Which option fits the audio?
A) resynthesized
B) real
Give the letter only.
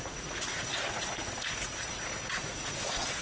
A